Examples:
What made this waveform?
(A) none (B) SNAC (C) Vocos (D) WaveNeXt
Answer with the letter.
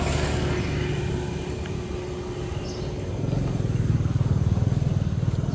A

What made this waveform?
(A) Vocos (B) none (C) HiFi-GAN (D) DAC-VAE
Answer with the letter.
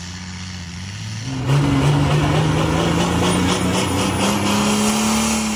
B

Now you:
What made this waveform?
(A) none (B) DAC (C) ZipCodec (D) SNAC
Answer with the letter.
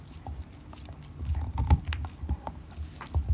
A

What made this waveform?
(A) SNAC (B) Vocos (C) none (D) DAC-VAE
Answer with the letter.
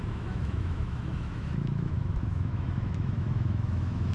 D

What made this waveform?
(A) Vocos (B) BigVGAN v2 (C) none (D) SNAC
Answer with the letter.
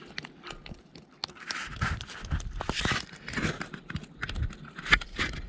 C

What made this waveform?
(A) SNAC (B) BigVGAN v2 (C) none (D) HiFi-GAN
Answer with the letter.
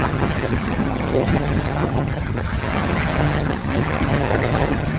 D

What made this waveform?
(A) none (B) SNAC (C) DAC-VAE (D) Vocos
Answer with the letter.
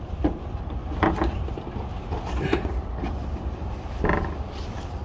A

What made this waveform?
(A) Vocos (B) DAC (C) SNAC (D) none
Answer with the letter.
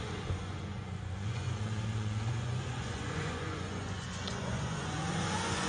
A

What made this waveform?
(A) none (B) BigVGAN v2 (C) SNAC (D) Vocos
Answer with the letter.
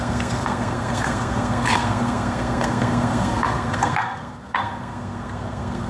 C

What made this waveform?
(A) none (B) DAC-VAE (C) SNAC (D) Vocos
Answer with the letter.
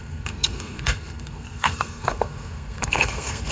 C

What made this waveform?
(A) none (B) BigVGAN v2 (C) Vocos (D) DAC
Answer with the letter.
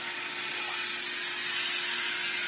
A